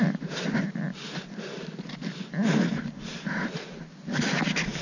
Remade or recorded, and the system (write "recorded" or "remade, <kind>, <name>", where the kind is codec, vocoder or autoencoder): recorded